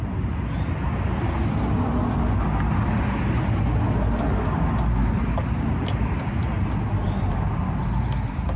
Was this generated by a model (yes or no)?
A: no